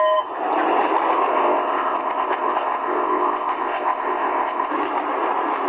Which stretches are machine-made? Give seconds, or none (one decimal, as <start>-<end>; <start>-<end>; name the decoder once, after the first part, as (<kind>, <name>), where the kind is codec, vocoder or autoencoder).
1.3-4.7 (codec, ZipCodec)